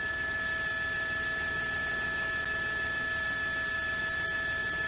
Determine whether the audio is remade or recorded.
recorded